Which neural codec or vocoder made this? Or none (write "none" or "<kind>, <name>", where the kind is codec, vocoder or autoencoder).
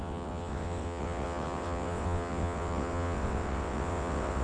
vocoder, WaveNeXt